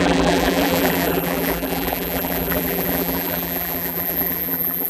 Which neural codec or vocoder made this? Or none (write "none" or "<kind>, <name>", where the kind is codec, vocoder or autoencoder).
vocoder, BigVGAN v2